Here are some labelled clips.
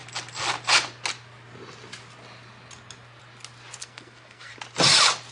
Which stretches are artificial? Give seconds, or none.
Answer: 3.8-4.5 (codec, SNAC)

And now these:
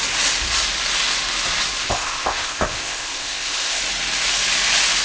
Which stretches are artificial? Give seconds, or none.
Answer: 1.8-3.8 (codec, ZipCodec)

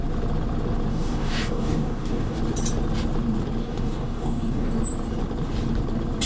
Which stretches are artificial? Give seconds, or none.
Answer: 0.9-2.4 (codec, DAC); 3.6-4.8

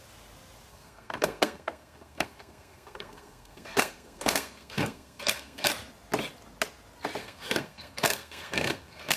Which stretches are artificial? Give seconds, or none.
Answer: 0.7-5.7 (codec, SNAC); 7.2-9.2

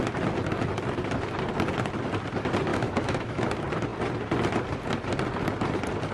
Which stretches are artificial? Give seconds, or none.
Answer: 2.7-3.5 (autoencoder, DAC-VAE)

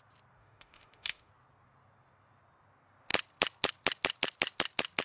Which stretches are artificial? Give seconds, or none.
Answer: 0.4-1.3 (autoencoder, DAC-VAE)

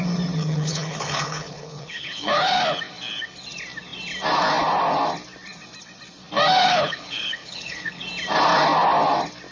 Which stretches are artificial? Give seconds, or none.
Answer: 0.4-2.5 (codec, HILCodec); 6.7-8.0

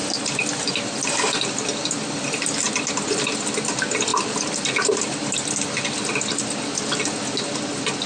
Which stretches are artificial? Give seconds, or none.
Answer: none